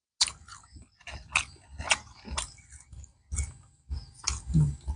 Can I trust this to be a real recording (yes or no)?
yes